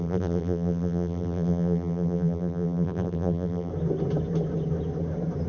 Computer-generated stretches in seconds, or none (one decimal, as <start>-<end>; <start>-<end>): 0.0-3.7